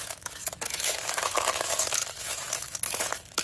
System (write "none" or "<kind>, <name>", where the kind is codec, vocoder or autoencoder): autoencoder, DAC-VAE